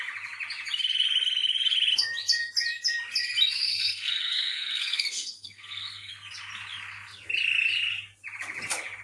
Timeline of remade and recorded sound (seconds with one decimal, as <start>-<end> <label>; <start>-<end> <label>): 0.0-3.7 recorded; 3.7-6.1 remade; 6.1-9.0 recorded